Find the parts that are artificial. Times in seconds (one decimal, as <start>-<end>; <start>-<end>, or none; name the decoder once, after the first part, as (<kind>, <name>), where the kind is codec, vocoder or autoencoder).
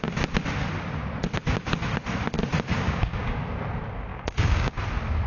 2.7-3.4 (codec, DAC); 4.1-4.8